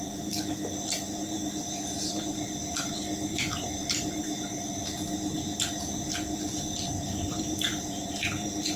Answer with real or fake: fake